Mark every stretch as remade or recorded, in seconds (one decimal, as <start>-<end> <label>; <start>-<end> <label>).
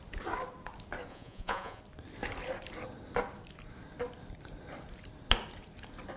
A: 0.0-1.1 recorded; 1.1-1.8 remade; 1.8-6.2 recorded